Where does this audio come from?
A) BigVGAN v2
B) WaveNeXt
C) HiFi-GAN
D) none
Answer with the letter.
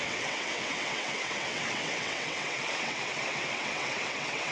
B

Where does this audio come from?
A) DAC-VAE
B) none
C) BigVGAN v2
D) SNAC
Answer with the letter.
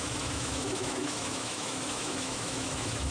A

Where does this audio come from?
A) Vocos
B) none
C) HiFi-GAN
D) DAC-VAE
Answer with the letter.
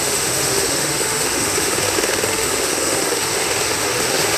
D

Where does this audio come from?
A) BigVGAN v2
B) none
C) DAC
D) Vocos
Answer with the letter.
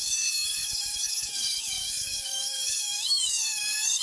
C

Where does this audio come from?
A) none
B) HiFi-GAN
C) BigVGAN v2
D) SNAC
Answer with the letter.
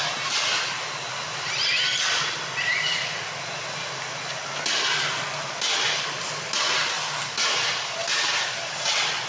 A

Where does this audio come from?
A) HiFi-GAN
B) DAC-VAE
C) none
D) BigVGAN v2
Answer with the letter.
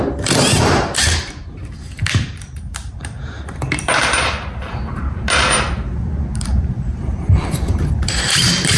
D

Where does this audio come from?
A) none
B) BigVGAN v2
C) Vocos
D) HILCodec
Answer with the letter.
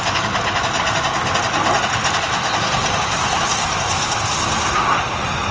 A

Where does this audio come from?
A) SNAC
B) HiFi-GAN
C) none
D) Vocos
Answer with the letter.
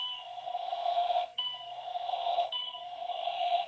A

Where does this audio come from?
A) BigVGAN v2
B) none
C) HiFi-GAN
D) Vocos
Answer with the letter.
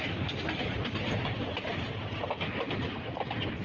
B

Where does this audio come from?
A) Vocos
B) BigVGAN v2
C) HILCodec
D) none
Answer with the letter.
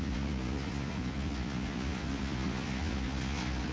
A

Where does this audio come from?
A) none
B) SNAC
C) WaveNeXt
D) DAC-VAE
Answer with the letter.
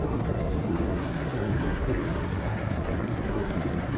B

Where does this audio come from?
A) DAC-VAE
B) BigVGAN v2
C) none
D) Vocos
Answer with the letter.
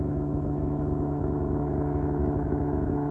A